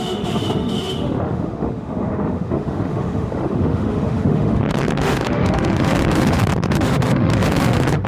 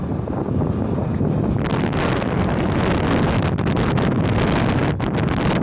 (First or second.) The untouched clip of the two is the second